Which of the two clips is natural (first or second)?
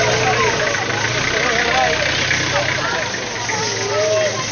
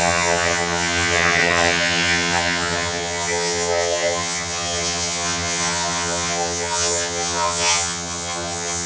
first